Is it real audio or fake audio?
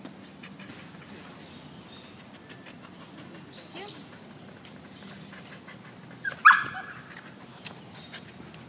real